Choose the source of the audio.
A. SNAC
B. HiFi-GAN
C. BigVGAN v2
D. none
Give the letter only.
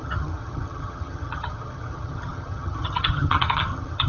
B